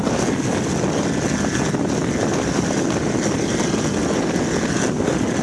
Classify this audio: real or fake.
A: real